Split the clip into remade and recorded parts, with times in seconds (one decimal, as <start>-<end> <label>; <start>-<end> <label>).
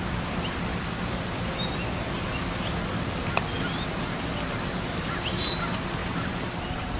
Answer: 0.0-6.0 recorded; 6.0-6.6 remade; 6.6-7.0 recorded